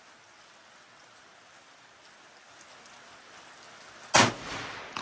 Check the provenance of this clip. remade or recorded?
recorded